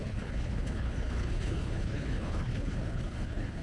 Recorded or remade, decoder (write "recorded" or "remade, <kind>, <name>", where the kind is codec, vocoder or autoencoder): remade, codec, HILCodec